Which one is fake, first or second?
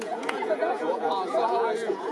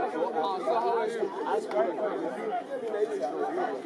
first